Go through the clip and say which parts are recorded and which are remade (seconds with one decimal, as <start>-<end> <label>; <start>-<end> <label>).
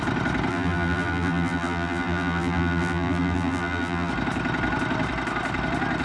0.0-0.5 recorded; 0.5-4.1 remade; 4.1-6.0 recorded